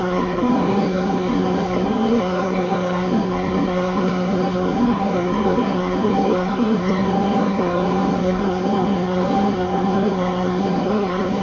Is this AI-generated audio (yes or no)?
yes